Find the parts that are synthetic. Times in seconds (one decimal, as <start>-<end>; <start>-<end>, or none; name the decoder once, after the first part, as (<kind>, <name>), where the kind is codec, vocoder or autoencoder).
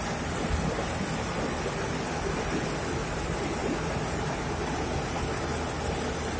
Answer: none